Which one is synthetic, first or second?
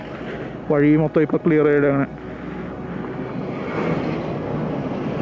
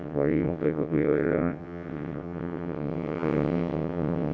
second